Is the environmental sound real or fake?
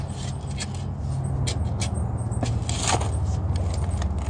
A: real